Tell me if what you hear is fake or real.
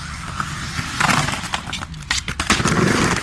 real